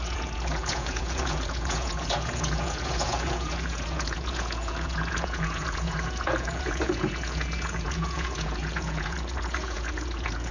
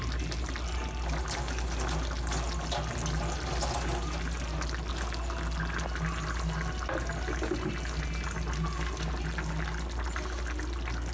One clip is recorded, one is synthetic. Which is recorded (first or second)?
second